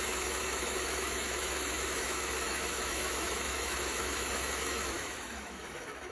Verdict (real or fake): fake